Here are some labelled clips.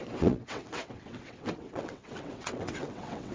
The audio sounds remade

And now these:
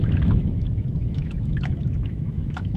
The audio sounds remade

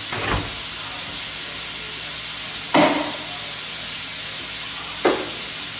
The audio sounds recorded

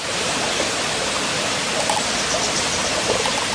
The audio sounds recorded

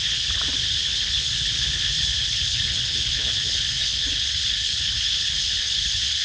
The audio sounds remade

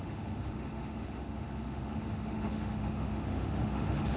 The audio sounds remade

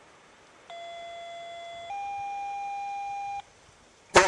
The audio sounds recorded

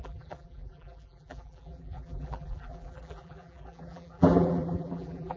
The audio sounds remade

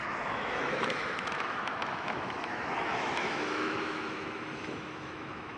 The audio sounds remade